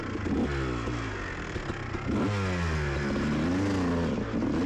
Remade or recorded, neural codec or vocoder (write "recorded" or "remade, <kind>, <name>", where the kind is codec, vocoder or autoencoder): recorded